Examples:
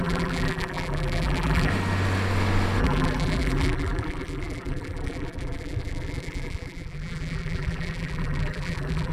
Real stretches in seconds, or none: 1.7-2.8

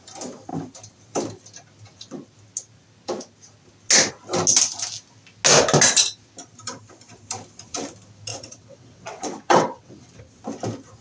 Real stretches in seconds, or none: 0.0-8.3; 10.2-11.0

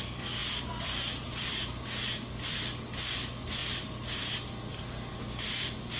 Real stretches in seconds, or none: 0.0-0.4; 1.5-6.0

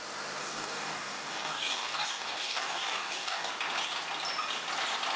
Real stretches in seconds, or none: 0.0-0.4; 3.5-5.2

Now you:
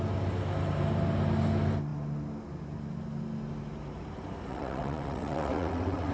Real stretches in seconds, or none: 0.0-4.5

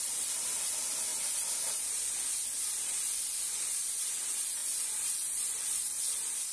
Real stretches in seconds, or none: 1.1-4.0

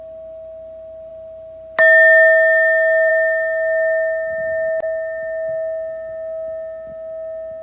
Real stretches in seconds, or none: 0.0-7.6

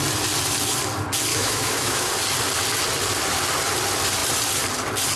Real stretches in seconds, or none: 0.0-1.3; 2.1-5.2